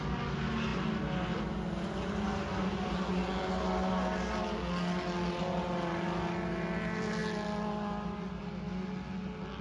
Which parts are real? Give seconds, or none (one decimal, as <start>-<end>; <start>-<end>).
0.0-9.6